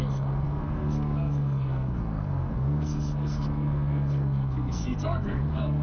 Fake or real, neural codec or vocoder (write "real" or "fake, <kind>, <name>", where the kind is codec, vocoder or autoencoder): fake, codec, SNAC